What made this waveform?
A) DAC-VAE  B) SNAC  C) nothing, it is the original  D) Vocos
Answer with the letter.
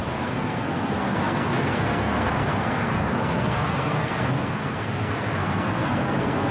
B